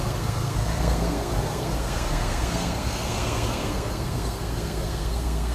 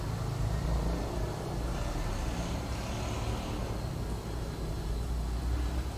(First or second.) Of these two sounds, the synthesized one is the first